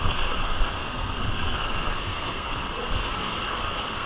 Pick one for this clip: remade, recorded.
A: remade